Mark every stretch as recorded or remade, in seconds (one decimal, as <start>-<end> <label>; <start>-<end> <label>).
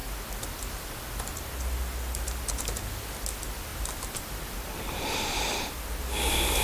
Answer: 0.0-3.7 recorded; 3.7-6.0 remade; 6.0-6.6 recorded